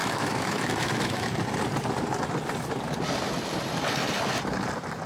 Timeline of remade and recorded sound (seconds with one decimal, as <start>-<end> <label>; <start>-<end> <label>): 0.0-1.2 remade; 1.2-5.1 recorded